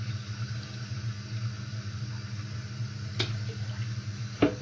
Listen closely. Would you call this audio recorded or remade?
recorded